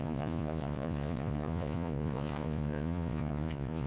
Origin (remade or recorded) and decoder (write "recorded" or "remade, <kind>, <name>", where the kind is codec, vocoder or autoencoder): remade, vocoder, Vocos